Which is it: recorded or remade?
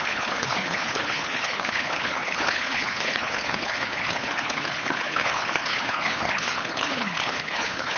remade